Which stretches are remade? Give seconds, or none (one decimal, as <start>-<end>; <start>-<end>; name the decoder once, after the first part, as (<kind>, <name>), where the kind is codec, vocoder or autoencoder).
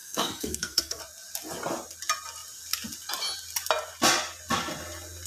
0.0-1.0 (codec, SNAC)